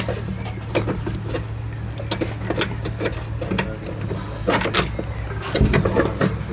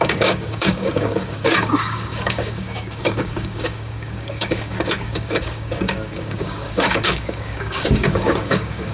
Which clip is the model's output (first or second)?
second